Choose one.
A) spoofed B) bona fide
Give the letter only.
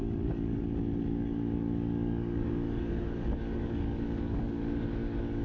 A